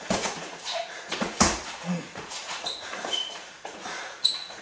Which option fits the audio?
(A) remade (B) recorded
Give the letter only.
A